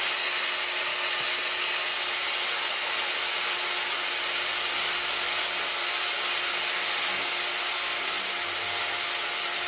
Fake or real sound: real